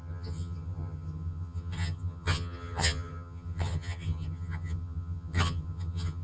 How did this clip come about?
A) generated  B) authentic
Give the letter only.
A